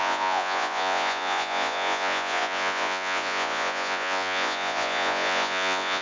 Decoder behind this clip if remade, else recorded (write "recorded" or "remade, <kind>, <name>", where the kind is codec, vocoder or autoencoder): remade, vocoder, Vocos